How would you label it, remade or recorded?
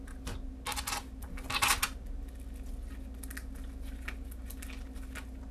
recorded